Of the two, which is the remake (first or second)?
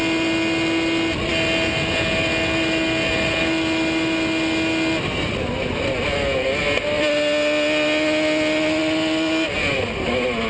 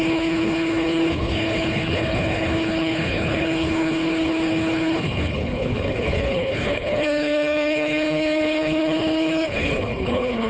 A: second